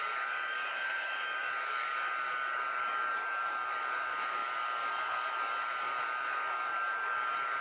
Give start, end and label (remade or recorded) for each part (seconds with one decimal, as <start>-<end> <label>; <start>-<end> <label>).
0.0-7.6 remade